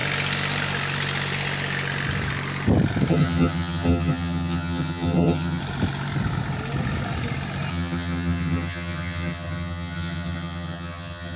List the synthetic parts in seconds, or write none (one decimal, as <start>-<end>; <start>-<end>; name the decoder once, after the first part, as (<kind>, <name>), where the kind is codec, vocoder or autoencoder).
3.1-5.6 (vocoder, HiFi-GAN); 7.7-11.4